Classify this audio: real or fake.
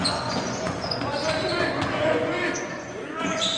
fake